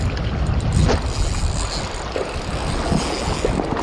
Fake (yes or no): no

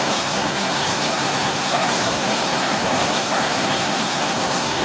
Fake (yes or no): yes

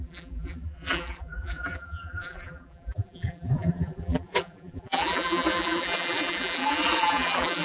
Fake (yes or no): yes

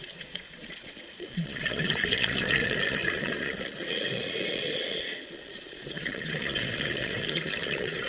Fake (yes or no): yes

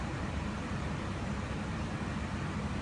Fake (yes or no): no